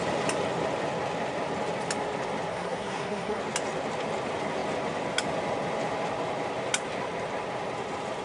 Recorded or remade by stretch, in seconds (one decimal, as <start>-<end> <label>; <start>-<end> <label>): 0.0-2.5 recorded; 2.5-3.4 remade; 3.4-8.2 recorded